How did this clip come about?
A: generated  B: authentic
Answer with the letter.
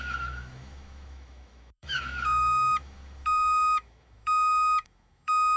A